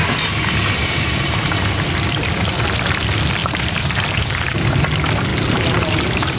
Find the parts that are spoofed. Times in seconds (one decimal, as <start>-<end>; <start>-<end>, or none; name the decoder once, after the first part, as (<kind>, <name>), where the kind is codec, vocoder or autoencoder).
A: 0.8-1.5 (vocoder, BigVGAN v2); 3.4-4.8; 5.3-6.4

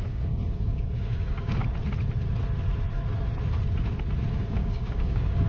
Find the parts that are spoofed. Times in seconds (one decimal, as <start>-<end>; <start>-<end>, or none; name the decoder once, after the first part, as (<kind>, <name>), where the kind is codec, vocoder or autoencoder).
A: 0.0-1.6 (codec, DAC); 4.3-5.5

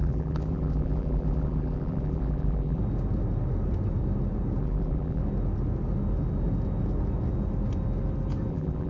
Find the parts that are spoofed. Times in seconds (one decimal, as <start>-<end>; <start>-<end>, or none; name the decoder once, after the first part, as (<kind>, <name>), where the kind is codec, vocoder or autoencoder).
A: 0.0-2.8 (vocoder, BigVGAN v2); 4.6-5.2; 8.5-8.9

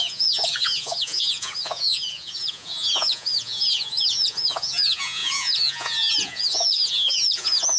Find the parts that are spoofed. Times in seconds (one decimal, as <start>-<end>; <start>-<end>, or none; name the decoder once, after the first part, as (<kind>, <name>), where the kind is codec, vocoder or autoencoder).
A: 0.0-7.8 (vocoder, Vocos)